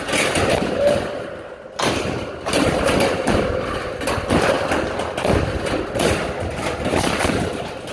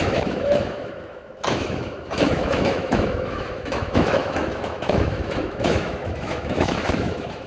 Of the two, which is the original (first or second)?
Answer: first